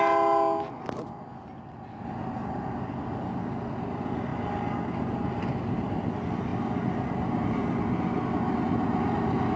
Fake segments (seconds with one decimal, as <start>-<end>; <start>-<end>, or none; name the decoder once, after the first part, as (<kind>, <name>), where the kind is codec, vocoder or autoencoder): none